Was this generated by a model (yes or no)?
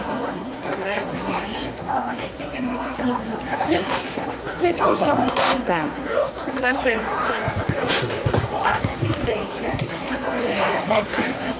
yes